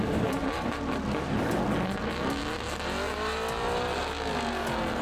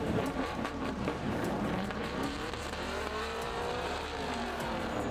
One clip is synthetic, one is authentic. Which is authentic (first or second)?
first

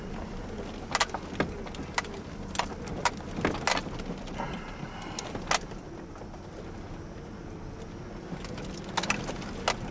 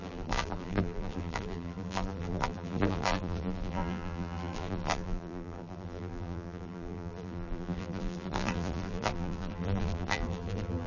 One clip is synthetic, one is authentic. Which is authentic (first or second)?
first